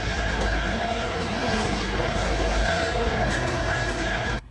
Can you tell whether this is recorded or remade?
remade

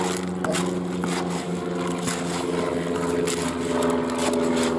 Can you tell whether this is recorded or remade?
recorded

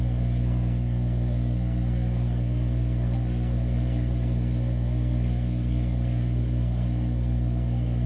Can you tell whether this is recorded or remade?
remade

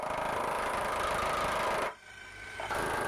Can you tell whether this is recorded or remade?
recorded